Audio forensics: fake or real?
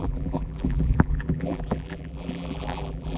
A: fake